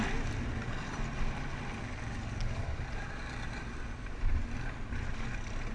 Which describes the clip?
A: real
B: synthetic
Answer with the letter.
A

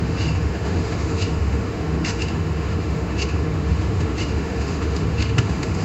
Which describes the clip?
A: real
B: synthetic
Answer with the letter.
B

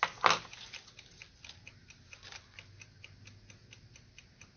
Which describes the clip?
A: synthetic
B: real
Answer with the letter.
B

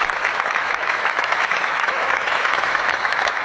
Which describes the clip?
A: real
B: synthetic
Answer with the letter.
B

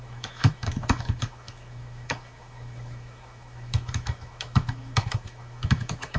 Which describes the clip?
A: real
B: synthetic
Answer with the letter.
B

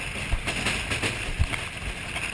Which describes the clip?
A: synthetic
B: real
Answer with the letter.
B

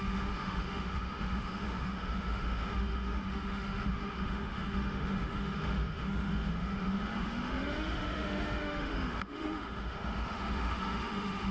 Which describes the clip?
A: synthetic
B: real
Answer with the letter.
A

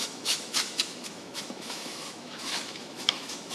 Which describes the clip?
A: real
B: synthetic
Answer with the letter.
B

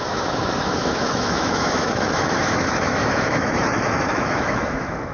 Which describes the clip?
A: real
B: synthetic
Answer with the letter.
B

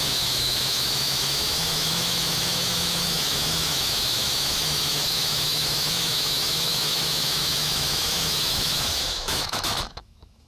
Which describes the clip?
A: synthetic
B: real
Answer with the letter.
A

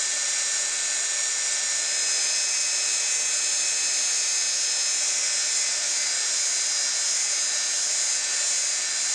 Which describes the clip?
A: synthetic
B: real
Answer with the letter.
B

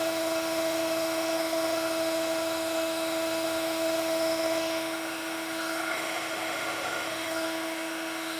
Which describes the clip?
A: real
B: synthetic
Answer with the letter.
B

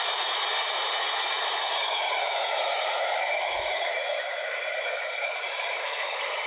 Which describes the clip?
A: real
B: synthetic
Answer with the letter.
B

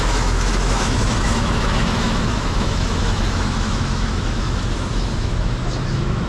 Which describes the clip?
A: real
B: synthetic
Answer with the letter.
B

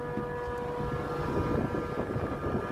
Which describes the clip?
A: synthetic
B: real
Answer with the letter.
B